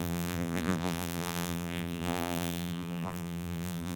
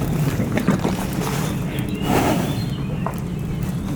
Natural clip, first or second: second